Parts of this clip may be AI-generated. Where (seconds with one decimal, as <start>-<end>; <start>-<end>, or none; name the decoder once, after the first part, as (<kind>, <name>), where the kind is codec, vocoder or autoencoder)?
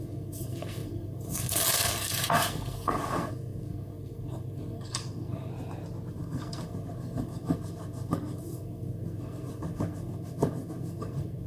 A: 0.0-5.5 (codec, SNAC); 6.1-11.5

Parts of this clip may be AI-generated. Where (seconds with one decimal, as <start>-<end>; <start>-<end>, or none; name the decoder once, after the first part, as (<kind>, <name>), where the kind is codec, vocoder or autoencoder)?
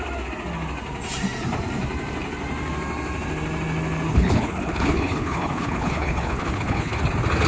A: 4.1-7.0 (codec, HILCodec)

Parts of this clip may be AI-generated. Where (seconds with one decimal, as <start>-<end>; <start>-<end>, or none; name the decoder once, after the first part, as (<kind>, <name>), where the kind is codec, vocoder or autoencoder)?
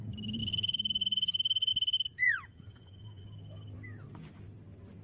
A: 2.2-3.2 (vocoder, Vocos)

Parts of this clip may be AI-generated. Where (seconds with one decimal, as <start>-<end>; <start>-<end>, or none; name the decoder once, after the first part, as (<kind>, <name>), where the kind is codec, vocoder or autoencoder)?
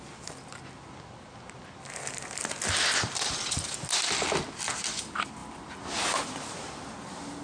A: none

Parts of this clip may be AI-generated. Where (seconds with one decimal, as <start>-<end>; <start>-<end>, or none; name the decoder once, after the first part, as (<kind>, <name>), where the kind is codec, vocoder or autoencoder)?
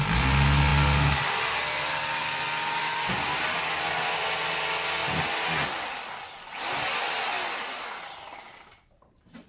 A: none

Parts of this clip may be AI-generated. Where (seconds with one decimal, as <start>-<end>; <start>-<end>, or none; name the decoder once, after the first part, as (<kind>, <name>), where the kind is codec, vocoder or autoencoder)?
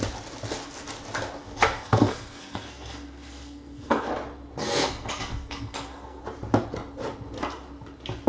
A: 1.4-4.1 (codec, SNAC); 4.6-6.2